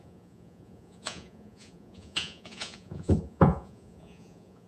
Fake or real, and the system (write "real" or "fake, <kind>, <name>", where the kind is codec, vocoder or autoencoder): fake, vocoder, Vocos